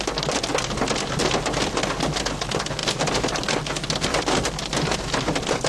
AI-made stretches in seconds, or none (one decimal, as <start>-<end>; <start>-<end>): 2.8-3.5; 4.1-5.7